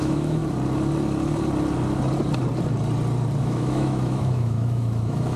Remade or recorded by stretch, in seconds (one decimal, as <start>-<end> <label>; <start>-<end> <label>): 0.0-0.4 remade; 0.4-3.4 recorded; 3.4-5.4 remade